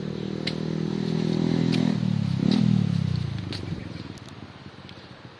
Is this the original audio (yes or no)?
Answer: yes